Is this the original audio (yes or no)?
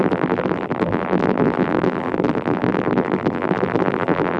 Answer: no